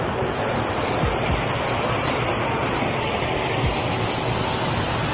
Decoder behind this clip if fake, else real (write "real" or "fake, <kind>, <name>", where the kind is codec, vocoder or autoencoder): real